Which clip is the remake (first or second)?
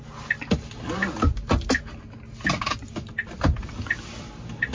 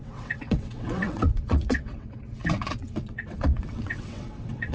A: second